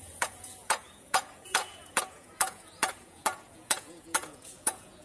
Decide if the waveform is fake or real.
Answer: fake